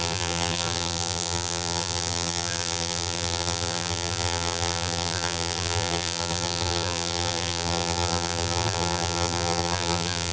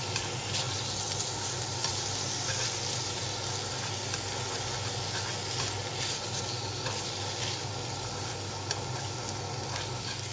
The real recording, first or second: second